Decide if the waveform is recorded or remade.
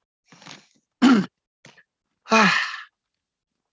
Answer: recorded